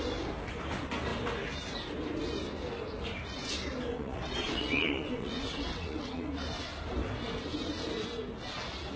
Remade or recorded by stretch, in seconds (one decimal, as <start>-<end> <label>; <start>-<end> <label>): 0.0-3.9 recorded; 3.9-6.3 remade; 6.3-9.0 recorded